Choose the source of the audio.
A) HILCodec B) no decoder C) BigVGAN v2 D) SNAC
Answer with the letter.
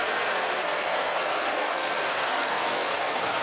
D